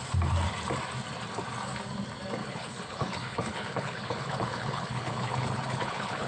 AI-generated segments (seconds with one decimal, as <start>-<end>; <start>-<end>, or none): 2.4-6.3